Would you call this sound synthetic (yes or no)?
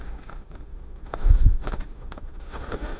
yes